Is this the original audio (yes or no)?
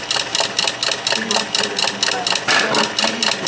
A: yes